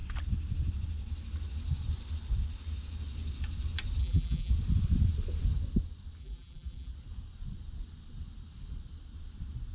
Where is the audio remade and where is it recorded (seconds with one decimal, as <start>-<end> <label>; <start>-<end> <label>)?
0.0-4.0 recorded; 4.0-4.5 remade; 4.5-6.2 recorded; 6.2-6.9 remade; 6.9-9.7 recorded